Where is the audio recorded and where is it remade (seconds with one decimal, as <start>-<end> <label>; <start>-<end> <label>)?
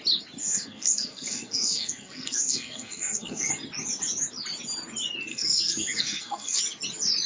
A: 0.0-0.4 recorded; 0.4-3.5 remade; 3.5-5.3 recorded; 5.3-6.6 remade; 6.6-7.3 recorded